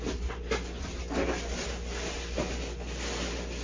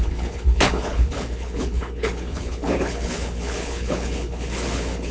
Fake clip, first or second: second